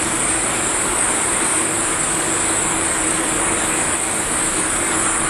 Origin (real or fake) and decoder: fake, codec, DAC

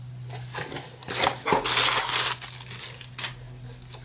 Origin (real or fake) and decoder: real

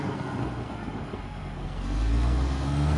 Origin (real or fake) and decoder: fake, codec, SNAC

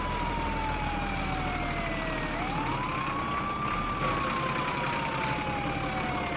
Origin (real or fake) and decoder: real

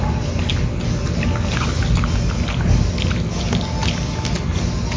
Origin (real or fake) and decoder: real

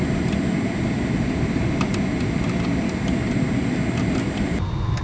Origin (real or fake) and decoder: real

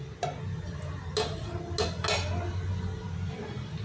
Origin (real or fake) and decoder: real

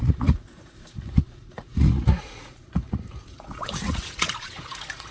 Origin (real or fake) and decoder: fake, vocoder, Vocos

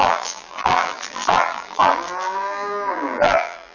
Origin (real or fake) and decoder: fake, vocoder, BigVGAN v2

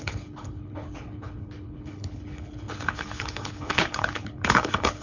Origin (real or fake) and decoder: fake, codec, HILCodec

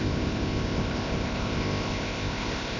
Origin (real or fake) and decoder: fake, codec, ZipCodec